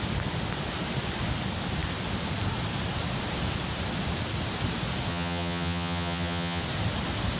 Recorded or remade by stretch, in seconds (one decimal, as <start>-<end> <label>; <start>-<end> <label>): 0.0-5.1 recorded; 5.1-6.6 remade; 6.6-7.4 recorded